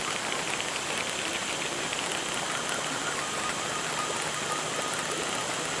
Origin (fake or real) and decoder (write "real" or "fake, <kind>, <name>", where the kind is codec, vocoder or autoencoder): real